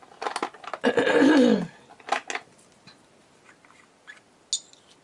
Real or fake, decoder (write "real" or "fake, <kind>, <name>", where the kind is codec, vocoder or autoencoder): real